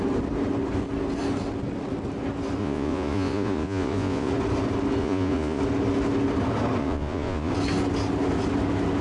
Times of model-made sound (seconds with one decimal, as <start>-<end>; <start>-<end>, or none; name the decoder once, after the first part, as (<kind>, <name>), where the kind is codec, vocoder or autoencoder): 2.6-4.3 (vocoder, Vocos); 5.0-5.6; 6.8-7.5